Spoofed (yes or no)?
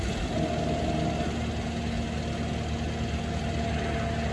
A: no